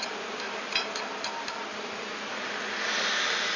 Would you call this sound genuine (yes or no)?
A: yes